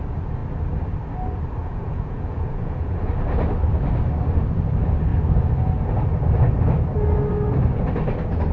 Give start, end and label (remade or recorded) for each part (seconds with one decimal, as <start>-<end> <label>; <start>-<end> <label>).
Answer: 0.0-1.6 recorded; 1.6-3.1 remade; 3.1-8.5 recorded